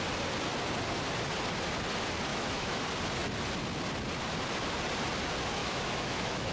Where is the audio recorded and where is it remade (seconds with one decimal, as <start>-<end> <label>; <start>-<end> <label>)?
0.0-2.3 recorded; 2.3-2.8 remade; 2.8-5.6 recorded; 5.6-6.5 remade